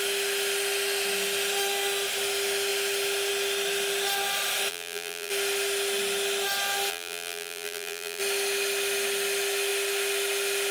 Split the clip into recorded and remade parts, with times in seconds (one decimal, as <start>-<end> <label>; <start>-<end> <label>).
0.0-4.7 recorded; 4.7-5.3 remade; 5.3-6.9 recorded; 6.9-8.2 remade; 8.2-10.7 recorded

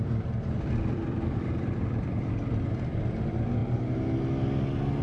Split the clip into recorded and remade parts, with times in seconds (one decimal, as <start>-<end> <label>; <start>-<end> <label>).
0.0-3.6 remade; 3.6-5.0 recorded

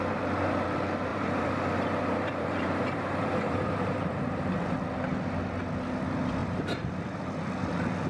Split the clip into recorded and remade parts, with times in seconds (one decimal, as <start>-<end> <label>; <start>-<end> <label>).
0.0-1.1 recorded; 1.1-4.4 remade; 4.4-6.4 recorded; 6.4-6.9 remade; 6.9-8.1 recorded

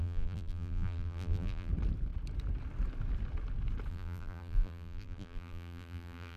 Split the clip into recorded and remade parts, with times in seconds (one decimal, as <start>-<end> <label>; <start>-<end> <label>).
0.0-1.7 remade; 1.7-3.9 recorded; 3.9-6.4 remade